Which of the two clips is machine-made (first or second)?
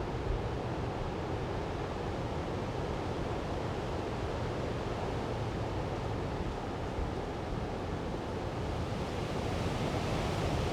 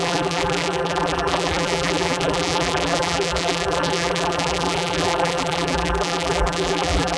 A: second